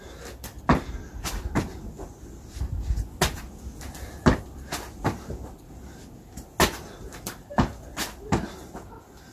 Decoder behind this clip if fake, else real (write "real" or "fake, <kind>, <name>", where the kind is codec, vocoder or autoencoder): real